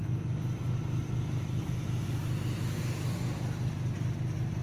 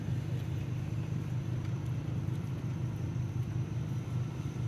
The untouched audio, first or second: first